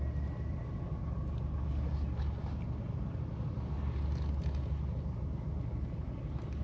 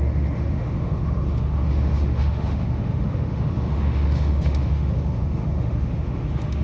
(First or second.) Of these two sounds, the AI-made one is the second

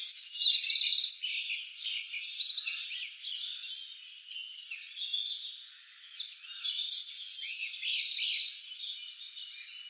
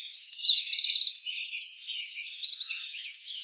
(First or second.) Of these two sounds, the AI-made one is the second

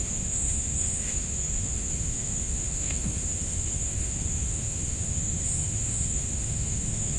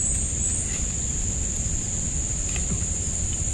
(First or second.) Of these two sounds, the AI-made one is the first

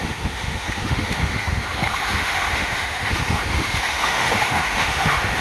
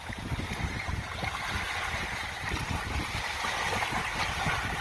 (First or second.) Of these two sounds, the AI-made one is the first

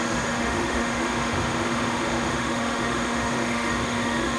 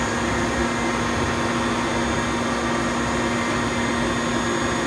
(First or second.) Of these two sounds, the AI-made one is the first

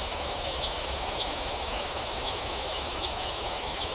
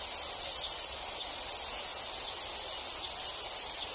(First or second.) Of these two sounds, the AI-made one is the first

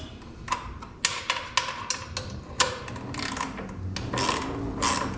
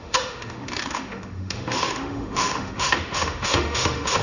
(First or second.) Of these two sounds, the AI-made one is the second